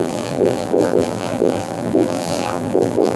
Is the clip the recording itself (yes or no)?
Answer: no